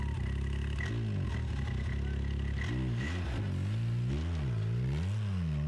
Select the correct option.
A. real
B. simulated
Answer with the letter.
A